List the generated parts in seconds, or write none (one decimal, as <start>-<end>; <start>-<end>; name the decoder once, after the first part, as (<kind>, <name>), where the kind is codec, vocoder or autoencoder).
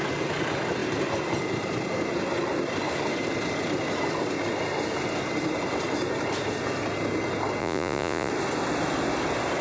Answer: 7.6-8.3 (vocoder, Vocos)